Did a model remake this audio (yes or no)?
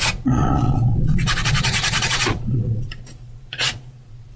yes